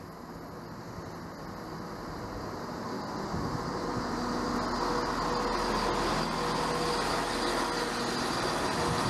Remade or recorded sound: recorded